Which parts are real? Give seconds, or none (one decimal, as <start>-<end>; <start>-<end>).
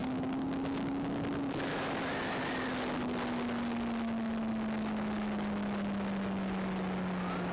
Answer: 0.0-7.5